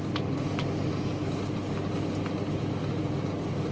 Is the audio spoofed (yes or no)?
no